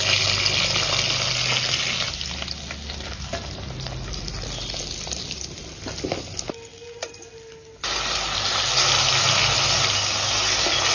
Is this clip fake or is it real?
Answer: real